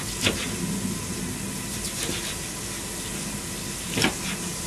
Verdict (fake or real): real